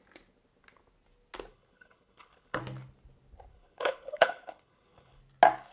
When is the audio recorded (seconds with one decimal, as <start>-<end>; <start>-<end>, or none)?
0.0-1.5; 2.6-3.5; 5.2-5.7